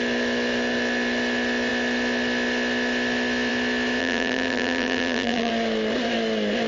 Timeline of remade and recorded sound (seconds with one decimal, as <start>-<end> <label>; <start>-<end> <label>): 0.0-4.0 recorded; 4.0-5.5 remade; 5.5-6.7 recorded